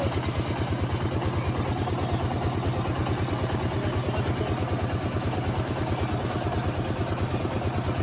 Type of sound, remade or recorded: recorded